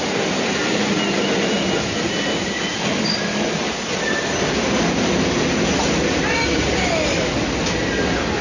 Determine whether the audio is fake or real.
real